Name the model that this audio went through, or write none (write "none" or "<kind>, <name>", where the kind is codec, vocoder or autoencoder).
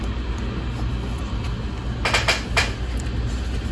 none